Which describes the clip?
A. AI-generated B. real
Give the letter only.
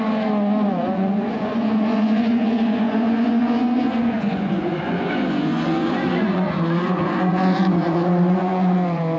A